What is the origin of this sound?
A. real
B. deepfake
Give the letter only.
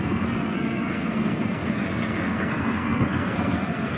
B